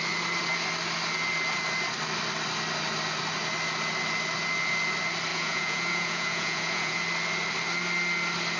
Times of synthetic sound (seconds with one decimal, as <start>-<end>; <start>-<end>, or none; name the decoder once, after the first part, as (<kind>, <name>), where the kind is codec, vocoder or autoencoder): 5.3-7.0 (vocoder, Vocos)